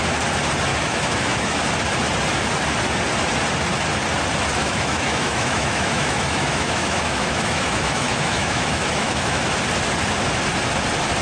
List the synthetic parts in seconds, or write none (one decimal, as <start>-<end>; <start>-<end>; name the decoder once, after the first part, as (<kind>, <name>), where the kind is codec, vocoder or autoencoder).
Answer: 0.7-1.6 (autoencoder, DAC-VAE); 4.6-9.4

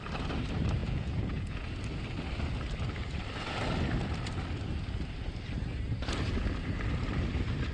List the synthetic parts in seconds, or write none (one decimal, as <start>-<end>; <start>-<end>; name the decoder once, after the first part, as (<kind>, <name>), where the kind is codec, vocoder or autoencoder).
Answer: 0.8-1.7 (vocoder, Vocos)

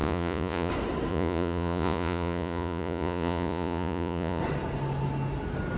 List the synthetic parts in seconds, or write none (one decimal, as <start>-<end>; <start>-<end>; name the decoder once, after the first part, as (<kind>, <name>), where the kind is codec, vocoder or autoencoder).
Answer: 0.0-0.7 (vocoder, Vocos); 1.1-4.4

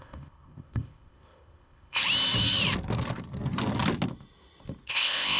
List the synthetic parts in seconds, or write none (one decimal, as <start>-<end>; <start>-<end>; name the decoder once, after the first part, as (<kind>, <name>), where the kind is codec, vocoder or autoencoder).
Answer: 0.0-2.0 (codec, ZipCodec); 4.9-5.4

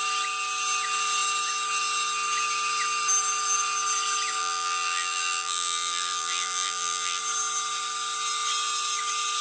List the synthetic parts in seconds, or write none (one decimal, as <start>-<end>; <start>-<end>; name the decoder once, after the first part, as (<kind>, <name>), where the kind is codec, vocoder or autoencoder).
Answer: 4.4-7.2 (vocoder, BigVGAN v2)

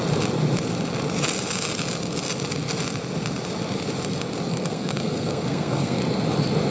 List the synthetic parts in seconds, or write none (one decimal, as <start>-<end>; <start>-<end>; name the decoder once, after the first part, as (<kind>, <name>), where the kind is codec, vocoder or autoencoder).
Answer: 4.5-6.0 (codec, SNAC)

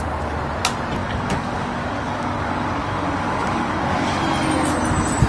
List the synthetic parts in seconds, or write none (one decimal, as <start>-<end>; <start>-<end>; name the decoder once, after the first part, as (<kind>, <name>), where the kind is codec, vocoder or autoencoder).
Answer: 1.0-4.2 (codec, DAC)

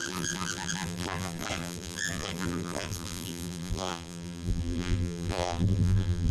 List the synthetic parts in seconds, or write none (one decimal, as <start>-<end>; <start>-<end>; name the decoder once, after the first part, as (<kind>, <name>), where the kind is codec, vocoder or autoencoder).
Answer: 0.0-6.3 (vocoder, BigVGAN v2)